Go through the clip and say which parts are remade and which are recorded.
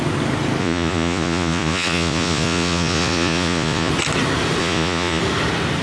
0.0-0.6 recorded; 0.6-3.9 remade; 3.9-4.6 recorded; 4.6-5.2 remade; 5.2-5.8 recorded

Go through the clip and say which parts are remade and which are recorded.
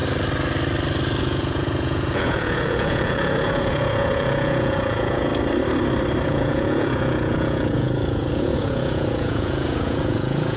0.0-1.2 recorded; 1.2-5.3 remade; 5.3-6.3 recorded; 6.3-10.6 remade